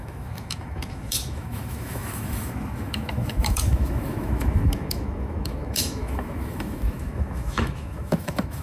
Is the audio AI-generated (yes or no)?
yes